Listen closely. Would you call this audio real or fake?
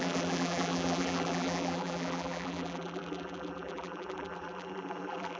fake